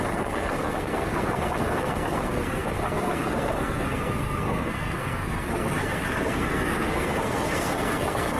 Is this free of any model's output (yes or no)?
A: no